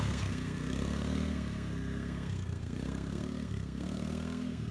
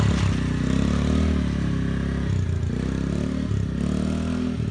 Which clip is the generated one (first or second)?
first